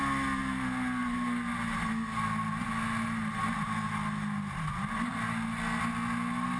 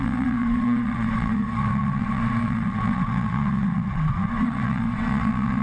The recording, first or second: first